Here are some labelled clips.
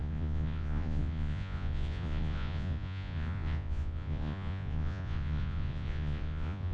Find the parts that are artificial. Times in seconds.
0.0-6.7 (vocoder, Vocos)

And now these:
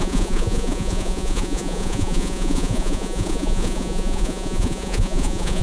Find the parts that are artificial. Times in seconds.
0.0-5.6 (vocoder, Vocos)

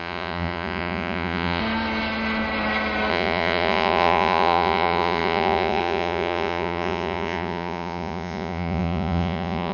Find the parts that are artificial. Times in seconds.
0.0-1.6 (vocoder, Vocos); 3.1-9.7

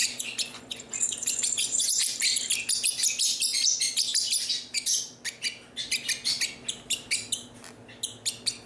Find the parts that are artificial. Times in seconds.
0.0-2.0 (vocoder, Vocos)

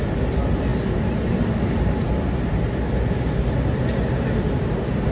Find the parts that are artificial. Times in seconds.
none

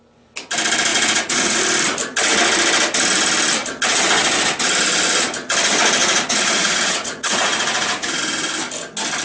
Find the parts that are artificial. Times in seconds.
0.9-1.6 (vocoder, Vocos); 6.0-8.2

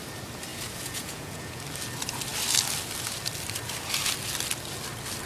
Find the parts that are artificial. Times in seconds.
0.5-1.6 (vocoder, Vocos)